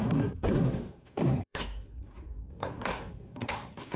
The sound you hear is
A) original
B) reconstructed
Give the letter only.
B